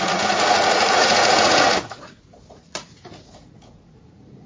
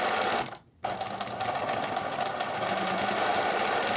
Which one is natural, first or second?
second